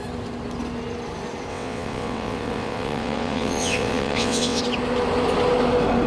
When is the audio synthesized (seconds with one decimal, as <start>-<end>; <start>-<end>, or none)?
1.5-4.6

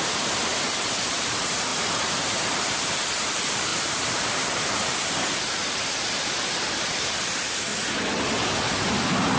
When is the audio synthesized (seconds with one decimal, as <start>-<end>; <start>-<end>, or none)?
0.0-0.5; 1.1-7.7; 8.8-9.4

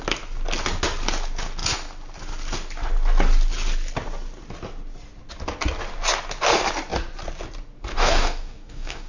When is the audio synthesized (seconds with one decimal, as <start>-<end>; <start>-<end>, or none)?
7.9-9.1

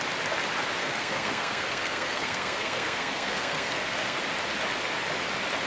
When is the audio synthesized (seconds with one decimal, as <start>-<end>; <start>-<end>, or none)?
0.8-4.2

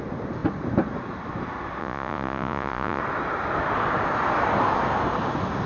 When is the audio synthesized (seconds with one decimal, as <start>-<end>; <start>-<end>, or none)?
1.8-3.0

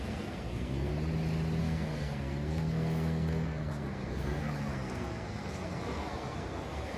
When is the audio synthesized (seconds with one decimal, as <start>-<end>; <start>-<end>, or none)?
0.0-0.9; 1.6-7.0